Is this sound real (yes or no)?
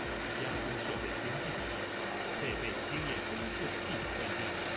yes